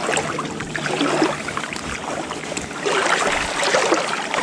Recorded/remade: recorded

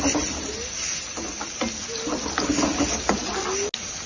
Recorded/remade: recorded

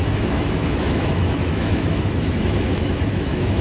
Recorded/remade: remade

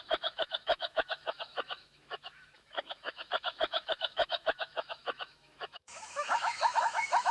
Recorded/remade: remade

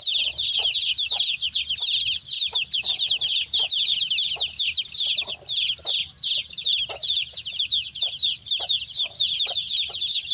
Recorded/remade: recorded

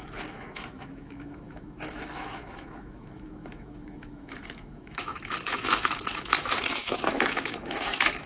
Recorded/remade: remade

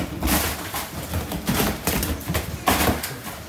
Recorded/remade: recorded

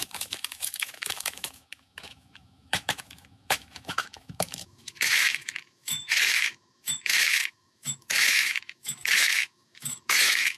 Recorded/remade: remade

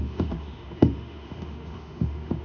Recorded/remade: remade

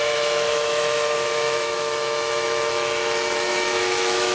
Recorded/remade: remade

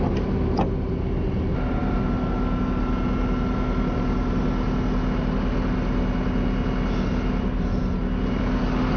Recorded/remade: recorded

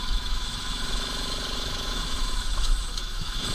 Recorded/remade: remade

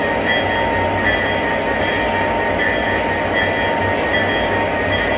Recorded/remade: recorded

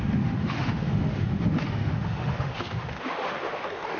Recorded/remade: remade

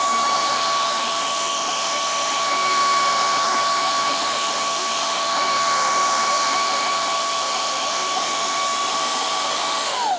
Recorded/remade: remade